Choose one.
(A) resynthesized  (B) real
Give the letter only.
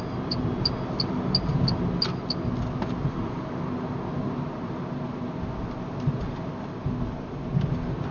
B